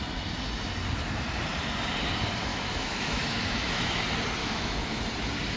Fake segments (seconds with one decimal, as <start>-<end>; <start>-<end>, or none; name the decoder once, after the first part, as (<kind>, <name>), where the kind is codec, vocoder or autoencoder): 2.5-4.0 (autoencoder, DAC-VAE); 4.4-5.0